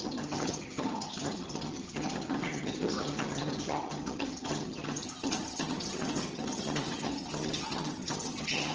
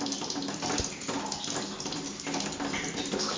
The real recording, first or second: second